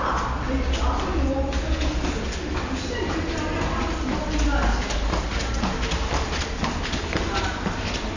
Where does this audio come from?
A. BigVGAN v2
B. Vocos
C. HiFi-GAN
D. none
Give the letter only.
D